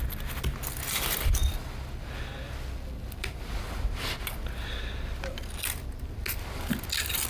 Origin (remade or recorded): recorded